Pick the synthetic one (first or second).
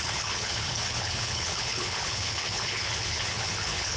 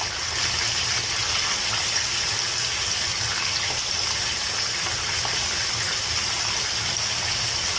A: first